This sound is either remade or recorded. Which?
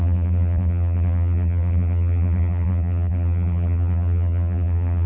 remade